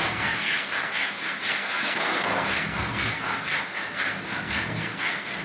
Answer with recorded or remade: remade